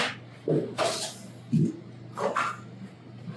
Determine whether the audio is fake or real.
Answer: real